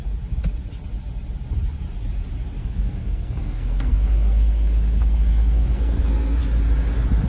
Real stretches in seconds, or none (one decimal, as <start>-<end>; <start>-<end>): 0.0-2.6; 6.4-7.3